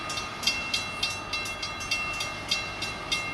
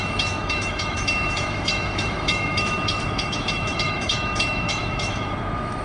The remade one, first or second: second